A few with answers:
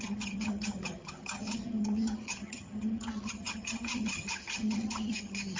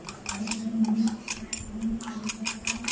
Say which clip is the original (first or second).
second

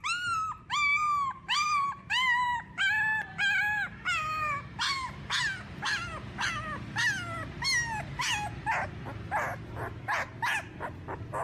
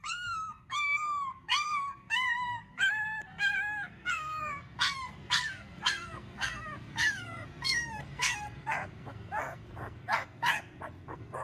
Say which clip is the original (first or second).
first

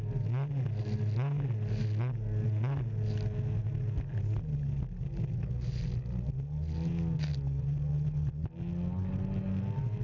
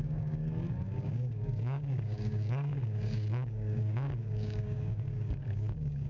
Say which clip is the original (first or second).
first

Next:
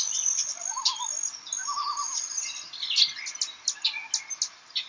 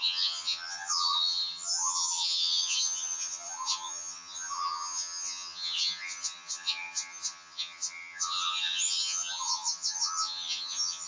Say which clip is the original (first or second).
first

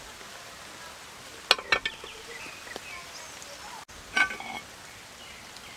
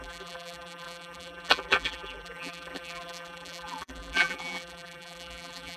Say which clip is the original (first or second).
first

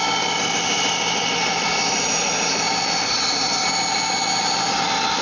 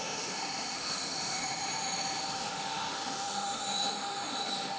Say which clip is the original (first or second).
first